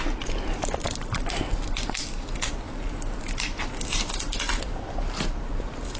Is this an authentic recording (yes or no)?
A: no